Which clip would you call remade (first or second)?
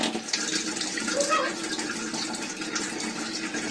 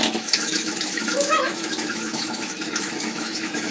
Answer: second